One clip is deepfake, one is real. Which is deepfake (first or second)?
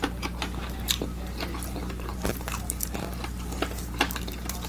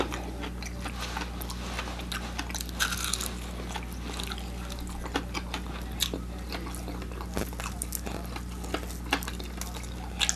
first